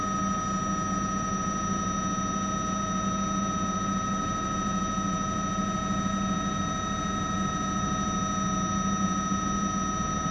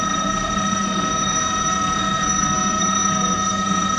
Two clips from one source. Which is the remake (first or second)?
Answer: second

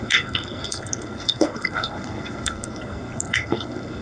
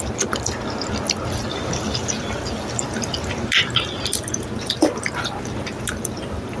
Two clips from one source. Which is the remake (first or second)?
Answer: first